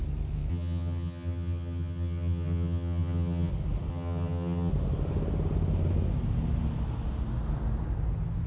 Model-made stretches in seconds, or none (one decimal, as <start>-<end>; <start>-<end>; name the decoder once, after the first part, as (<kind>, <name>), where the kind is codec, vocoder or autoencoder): 0.5-3.5 (vocoder, HiFi-GAN); 3.9-4.7